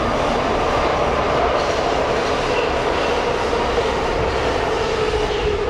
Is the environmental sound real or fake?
real